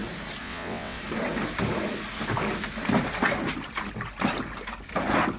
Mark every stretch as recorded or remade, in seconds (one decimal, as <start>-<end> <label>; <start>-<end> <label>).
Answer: 0.0-0.4 recorded; 0.4-1.0 remade; 1.0-5.4 recorded